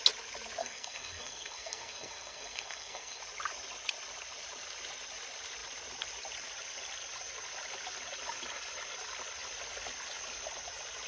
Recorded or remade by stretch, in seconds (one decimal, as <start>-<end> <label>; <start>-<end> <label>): 0.0-0.6 recorded; 0.6-3.2 remade; 3.2-11.1 recorded